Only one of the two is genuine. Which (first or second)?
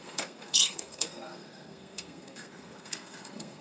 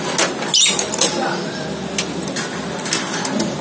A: second